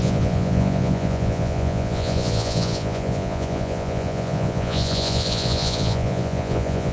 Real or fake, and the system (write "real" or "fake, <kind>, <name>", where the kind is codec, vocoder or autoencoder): fake, vocoder, Vocos